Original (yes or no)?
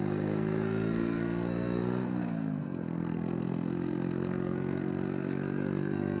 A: no